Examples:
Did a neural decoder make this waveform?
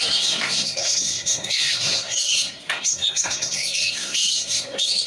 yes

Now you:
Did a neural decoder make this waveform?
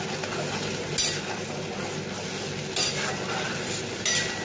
no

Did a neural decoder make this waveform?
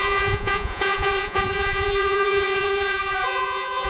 yes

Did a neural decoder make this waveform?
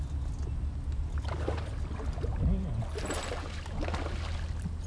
no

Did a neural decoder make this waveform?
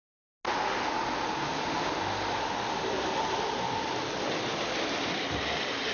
no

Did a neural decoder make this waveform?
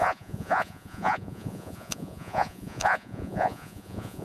yes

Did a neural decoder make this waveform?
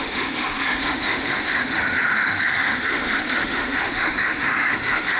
yes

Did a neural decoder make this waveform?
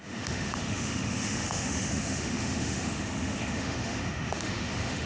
yes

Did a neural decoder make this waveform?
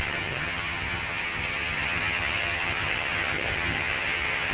yes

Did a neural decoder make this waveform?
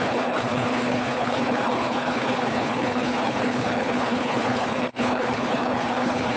yes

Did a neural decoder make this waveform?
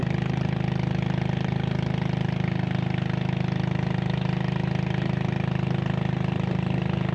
no